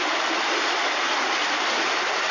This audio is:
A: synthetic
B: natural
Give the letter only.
B